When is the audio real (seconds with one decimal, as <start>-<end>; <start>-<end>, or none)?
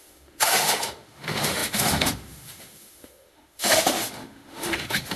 none